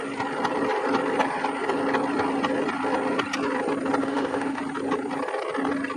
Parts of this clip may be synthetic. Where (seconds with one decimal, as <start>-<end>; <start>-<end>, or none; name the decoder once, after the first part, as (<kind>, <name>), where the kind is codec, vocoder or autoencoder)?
4.0-4.6 (autoencoder, DAC-VAE)